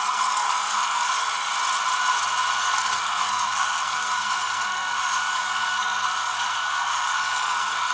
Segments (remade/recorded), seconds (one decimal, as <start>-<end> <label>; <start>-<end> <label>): 0.0-1.5 remade; 1.5-2.6 recorded; 2.6-7.9 remade